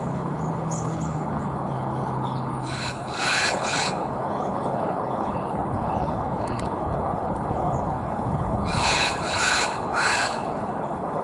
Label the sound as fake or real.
fake